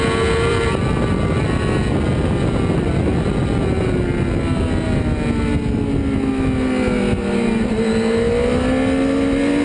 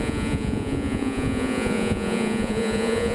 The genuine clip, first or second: first